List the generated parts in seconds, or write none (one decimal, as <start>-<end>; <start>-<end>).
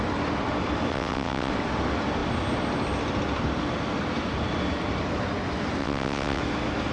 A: 0.9-1.5; 5.8-6.4